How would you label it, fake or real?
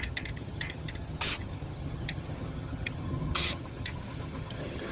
fake